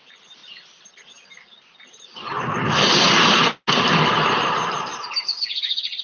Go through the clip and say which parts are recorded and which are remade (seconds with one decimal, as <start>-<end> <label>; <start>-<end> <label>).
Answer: 0.0-0.4 remade; 0.4-4.0 recorded; 4.0-6.0 remade